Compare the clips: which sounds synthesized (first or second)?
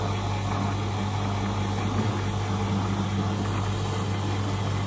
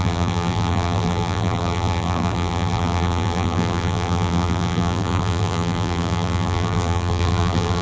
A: second